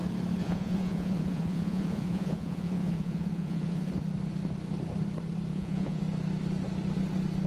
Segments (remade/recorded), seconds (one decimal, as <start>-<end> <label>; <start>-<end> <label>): 0.0-0.4 recorded; 0.4-3.9 remade; 3.9-5.5 recorded; 5.5-6.0 remade; 6.0-7.5 recorded